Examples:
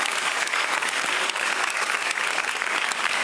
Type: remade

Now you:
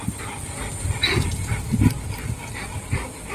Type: recorded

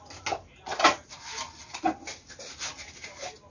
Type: recorded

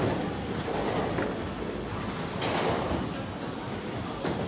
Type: recorded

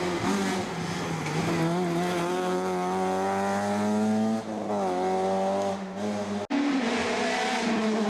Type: recorded